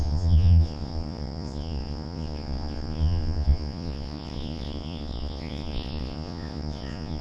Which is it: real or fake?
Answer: fake